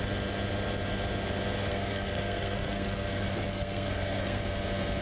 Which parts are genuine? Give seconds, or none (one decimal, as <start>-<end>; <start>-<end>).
0.0-1.7; 4.4-5.0